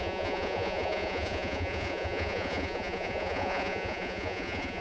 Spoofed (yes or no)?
yes